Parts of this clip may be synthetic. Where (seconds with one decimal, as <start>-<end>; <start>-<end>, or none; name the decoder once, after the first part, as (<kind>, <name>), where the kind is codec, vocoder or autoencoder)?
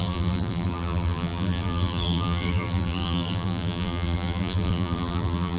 0.0-5.6 (vocoder, BigVGAN v2)